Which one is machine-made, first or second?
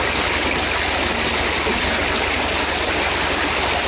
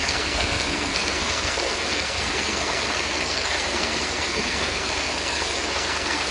second